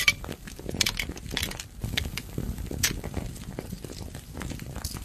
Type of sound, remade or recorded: remade